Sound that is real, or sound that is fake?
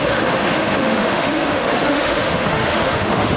fake